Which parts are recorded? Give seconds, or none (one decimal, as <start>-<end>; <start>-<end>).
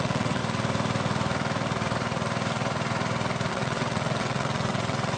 0.4-3.5